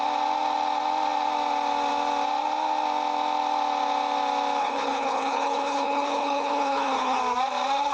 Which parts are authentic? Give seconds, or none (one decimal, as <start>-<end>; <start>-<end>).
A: 0.0-4.6; 7.2-7.9